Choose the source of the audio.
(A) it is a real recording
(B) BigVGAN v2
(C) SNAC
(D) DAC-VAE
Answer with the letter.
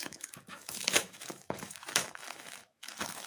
D